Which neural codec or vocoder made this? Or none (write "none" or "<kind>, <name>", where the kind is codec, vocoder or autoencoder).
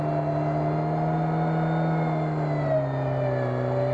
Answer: none